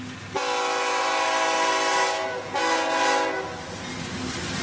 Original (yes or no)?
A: yes